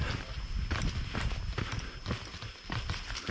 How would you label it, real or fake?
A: real